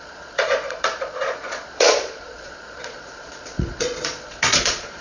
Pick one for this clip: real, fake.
fake